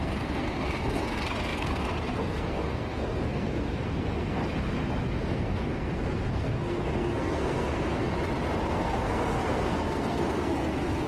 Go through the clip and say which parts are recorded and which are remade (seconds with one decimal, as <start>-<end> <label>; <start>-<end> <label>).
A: 0.0-4.4 remade; 4.4-5.2 recorded; 5.2-8.1 remade; 8.1-8.7 recorded; 8.7-11.1 remade